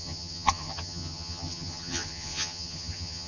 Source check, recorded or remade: remade